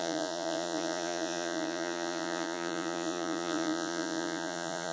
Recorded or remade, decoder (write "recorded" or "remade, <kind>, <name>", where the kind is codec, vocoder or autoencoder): remade, vocoder, Vocos